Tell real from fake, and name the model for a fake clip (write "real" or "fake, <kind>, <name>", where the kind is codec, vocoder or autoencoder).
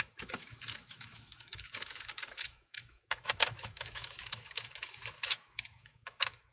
fake, autoencoder, DAC-VAE